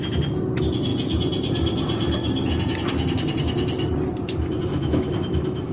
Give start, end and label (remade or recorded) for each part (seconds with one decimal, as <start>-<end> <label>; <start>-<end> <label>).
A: 0.0-4.7 recorded; 4.7-5.7 remade